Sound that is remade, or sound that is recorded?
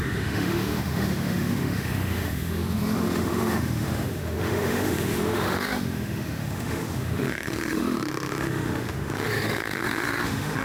remade